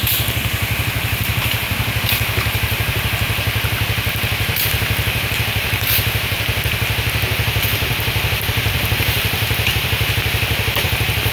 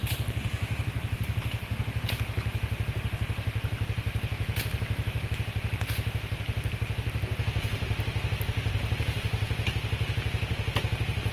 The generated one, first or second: first